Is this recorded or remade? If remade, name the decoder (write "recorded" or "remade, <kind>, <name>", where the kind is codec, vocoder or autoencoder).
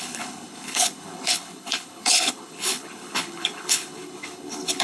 remade, codec, HILCodec